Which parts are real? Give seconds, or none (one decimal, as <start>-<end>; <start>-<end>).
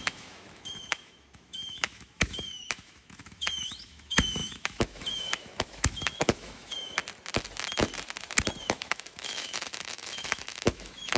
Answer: 7.0-8.6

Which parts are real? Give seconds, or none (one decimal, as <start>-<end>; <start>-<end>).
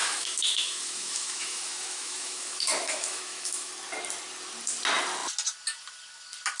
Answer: 3.7-6.6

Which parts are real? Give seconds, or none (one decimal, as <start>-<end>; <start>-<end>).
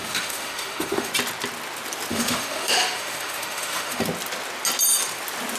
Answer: 1.1-2.1; 4.0-5.6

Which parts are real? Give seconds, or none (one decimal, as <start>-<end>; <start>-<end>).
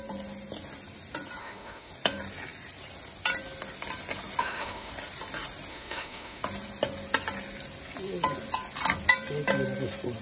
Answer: 0.0-1.4; 1.9-4.4; 4.9-5.7; 6.4-10.2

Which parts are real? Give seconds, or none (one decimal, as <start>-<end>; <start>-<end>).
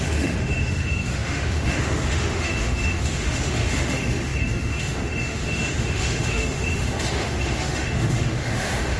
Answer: none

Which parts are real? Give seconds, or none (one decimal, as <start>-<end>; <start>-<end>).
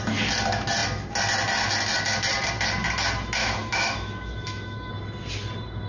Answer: 0.0-3.4; 4.9-5.9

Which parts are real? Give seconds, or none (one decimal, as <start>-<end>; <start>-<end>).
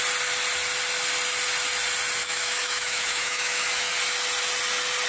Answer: 0.0-2.2; 3.9-5.1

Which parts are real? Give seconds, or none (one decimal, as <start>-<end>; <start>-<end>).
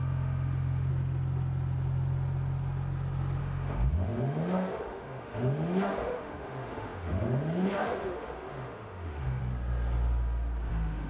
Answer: 0.9-3.4; 9.4-10.7